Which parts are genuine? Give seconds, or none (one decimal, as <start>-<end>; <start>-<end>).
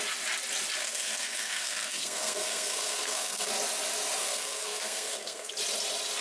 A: 0.0-0.8; 3.5-4.2; 5.5-6.2